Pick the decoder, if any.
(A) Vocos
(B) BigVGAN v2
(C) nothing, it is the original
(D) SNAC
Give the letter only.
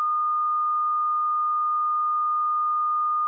C